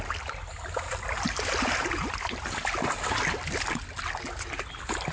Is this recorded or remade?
recorded